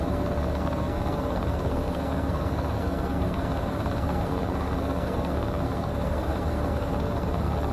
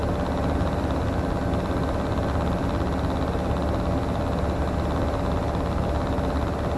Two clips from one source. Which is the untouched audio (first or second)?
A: second